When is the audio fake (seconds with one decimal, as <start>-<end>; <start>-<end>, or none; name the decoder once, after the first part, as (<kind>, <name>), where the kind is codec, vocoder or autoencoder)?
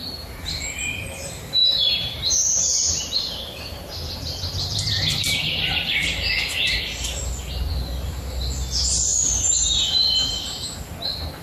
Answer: 0.0-1.1 (vocoder, BigVGAN v2); 1.6-6.3; 9.1-10.3